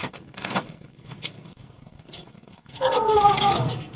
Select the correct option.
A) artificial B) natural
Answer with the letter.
A